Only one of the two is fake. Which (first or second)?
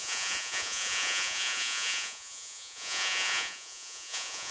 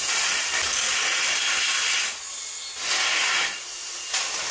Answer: first